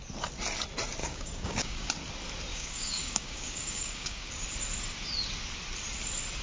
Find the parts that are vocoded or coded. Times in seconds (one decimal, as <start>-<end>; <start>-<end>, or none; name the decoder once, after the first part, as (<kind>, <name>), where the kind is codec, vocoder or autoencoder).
1.0-1.9 (codec, DAC); 2.5-4.3

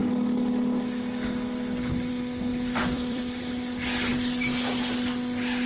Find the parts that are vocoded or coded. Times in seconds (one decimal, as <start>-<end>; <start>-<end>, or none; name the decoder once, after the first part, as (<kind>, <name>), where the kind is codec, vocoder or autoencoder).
2.5-3.2 (vocoder, BigVGAN v2)

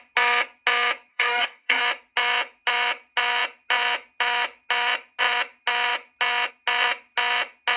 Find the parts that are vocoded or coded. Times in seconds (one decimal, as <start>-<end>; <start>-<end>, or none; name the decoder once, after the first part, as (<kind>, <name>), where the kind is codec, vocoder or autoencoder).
1.1-1.8 (codec, DAC)